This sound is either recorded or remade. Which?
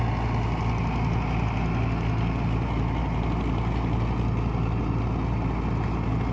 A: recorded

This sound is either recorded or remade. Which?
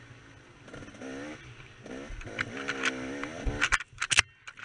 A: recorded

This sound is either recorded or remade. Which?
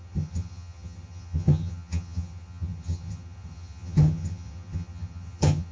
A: remade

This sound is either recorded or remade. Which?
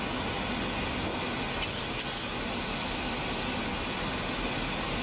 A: recorded